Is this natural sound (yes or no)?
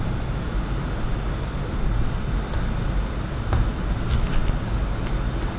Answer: yes